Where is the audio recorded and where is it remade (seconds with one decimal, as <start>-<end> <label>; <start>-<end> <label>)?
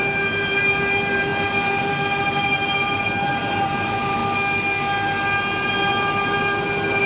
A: 0.0-4.2 remade; 4.2-5.9 recorded; 5.9-7.1 remade